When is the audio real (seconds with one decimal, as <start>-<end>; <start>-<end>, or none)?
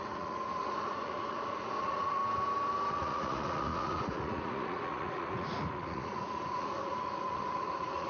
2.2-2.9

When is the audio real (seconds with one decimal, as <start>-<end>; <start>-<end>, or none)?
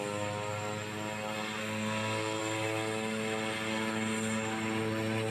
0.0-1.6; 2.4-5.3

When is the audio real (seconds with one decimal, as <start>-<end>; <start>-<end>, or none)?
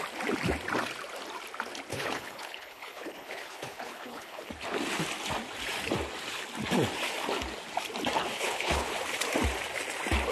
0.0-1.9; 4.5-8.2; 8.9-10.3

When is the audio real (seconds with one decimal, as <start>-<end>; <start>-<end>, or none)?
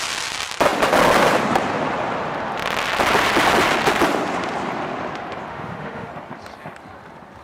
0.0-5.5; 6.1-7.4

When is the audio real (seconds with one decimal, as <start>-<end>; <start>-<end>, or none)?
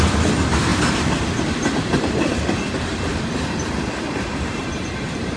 3.1-3.9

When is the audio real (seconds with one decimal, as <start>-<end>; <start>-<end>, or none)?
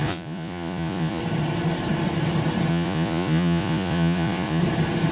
1.2-2.7; 4.6-5.1